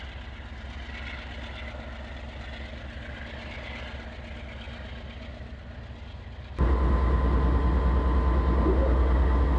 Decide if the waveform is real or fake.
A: real